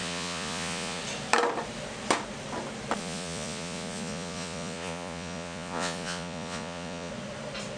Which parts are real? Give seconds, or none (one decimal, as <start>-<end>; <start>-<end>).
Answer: 1.0-3.0; 7.1-7.8